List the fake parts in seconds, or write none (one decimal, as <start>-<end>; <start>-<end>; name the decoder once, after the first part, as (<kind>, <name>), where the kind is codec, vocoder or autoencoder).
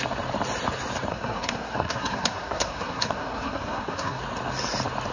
1.1-4.2 (codec, SNAC)